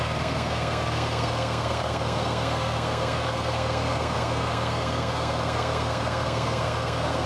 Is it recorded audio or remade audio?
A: remade